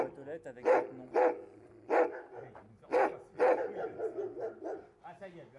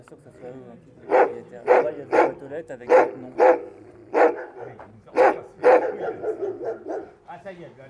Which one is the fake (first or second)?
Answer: second